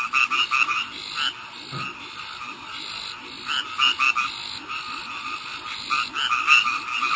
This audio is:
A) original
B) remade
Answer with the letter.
A